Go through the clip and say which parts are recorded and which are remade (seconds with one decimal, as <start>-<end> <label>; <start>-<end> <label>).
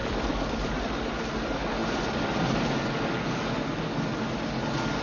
0.0-0.8 remade; 0.8-1.8 recorded; 1.8-2.9 remade; 2.9-5.0 recorded